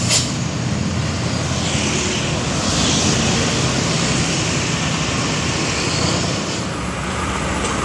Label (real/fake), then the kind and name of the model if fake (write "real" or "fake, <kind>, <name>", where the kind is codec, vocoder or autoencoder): real